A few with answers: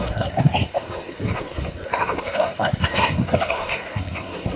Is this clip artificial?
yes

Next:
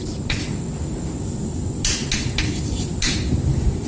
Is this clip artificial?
no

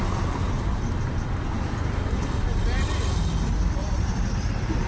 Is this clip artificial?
no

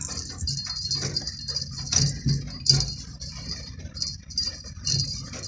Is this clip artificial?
no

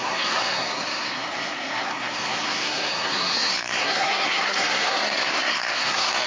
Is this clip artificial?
yes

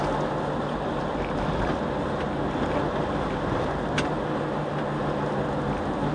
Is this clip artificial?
no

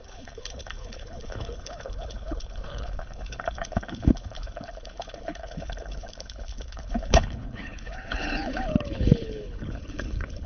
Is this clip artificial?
yes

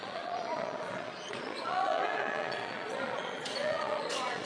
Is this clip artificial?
yes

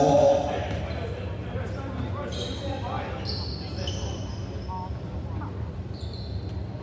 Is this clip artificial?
no